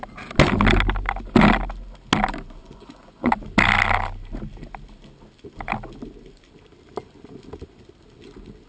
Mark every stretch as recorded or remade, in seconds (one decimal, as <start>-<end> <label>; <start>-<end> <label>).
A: 0.0-2.6 recorded; 2.6-3.3 remade; 3.3-8.7 recorded